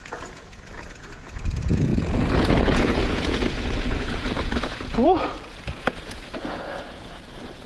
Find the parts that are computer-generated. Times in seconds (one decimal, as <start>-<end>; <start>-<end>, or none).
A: 0.0-7.7